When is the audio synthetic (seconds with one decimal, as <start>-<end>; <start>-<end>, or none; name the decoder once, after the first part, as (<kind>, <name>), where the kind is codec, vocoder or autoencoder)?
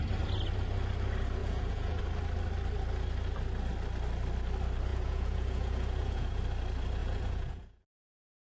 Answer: 1.4-2.0 (vocoder, Vocos); 4.9-6.4; 7.0-7.9